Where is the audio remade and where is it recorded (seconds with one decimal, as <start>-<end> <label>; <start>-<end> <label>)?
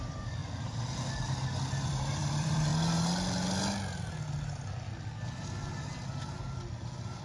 0.0-0.4 remade; 0.4-1.8 recorded; 1.8-2.7 remade; 2.7-7.2 recorded